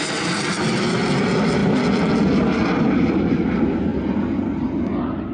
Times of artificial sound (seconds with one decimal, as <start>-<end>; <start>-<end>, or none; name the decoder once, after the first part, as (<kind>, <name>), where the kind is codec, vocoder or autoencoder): 0.0-1.6 (vocoder, BigVGAN v2); 2.8-3.9